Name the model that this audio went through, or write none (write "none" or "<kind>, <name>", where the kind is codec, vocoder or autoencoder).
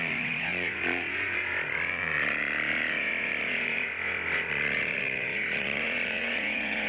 vocoder, Vocos